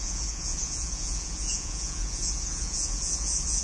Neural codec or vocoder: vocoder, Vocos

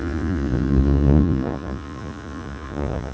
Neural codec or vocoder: vocoder, Vocos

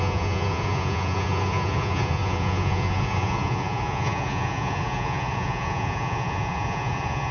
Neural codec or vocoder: vocoder, Vocos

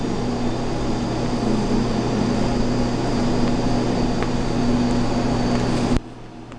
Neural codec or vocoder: none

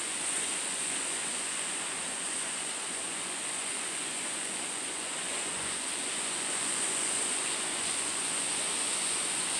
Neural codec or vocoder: vocoder, Vocos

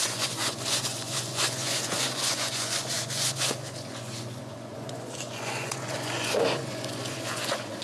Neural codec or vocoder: vocoder, Vocos